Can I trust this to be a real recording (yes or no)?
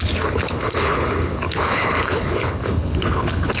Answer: no